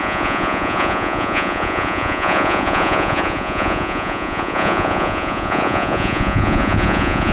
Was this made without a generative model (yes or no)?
no